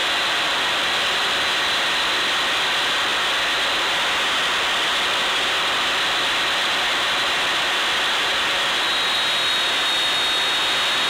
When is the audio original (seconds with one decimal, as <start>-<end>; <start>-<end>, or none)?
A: 2.1-6.6; 9.5-11.1